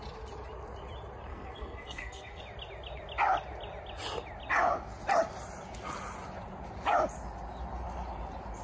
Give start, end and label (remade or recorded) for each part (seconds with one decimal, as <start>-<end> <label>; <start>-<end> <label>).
0.0-1.3 recorded; 1.3-2.4 remade; 2.4-8.6 recorded